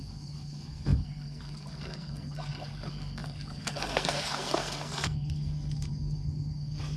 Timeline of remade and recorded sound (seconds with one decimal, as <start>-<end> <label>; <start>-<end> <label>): 0.0-7.0 remade